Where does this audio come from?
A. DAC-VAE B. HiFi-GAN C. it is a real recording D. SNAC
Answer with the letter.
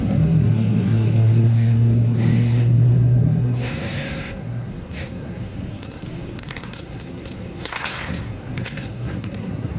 D